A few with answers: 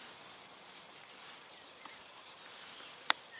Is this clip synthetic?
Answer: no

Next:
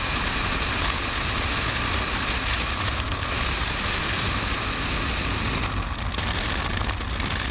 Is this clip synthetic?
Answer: no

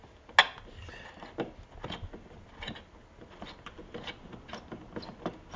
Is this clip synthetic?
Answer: no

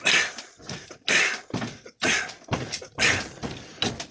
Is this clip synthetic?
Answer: no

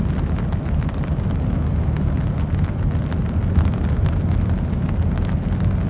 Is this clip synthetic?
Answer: no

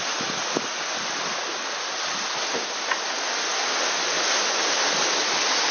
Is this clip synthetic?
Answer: no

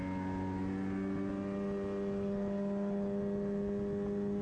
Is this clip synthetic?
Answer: no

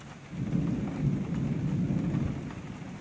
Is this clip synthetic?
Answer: no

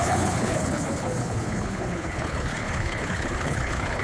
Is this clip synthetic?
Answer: yes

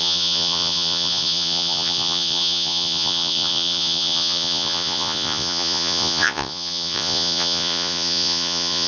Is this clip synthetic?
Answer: yes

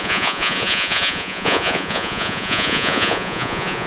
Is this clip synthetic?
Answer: yes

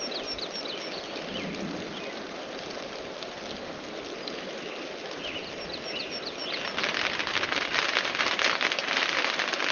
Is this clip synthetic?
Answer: no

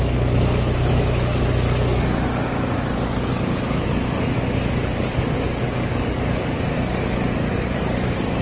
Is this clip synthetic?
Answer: yes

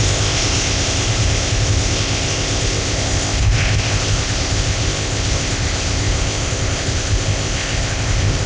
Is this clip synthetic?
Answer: yes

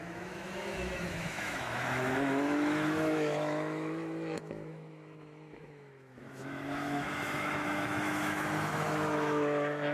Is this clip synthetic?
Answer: yes